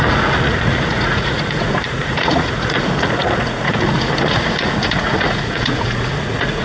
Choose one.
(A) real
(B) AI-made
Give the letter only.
B